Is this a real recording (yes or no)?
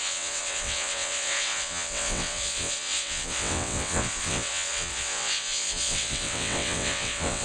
no